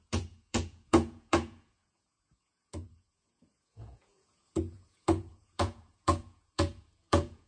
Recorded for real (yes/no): no